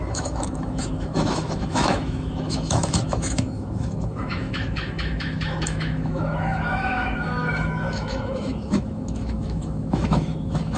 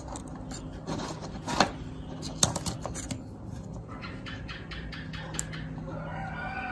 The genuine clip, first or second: second